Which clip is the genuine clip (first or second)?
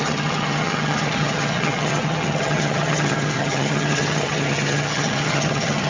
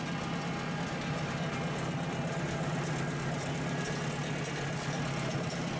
second